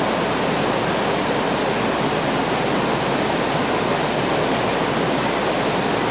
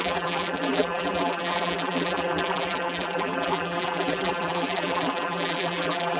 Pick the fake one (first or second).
second